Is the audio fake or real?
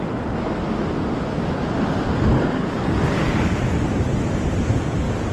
real